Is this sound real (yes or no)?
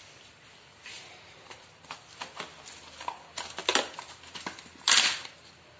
yes